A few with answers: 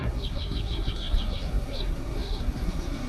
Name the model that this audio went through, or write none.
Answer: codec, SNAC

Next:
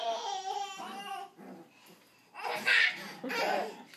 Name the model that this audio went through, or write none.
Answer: none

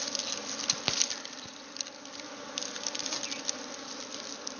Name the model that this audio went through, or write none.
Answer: none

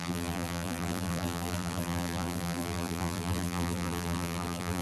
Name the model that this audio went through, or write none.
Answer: vocoder, BigVGAN v2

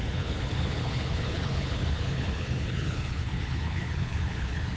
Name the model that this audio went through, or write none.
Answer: codec, HILCodec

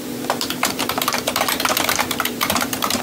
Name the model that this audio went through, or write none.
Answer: vocoder, BigVGAN v2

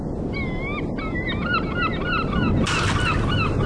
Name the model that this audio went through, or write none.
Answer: none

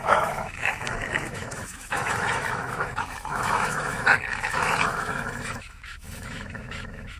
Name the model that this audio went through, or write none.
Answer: autoencoder, DAC-VAE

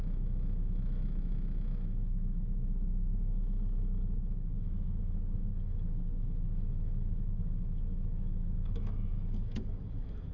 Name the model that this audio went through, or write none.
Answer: autoencoder, DAC-VAE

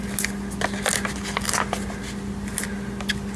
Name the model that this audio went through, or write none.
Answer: none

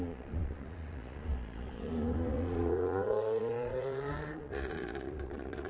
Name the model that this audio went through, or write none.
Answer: vocoder, Vocos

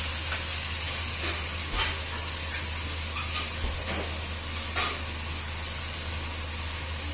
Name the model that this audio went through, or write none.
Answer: none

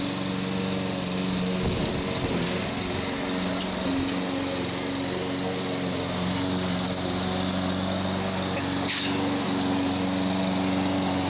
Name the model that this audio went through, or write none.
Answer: none